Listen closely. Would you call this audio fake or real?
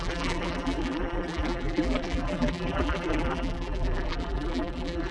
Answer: fake